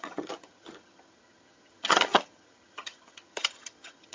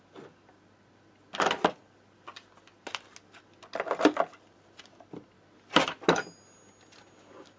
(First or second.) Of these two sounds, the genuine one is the second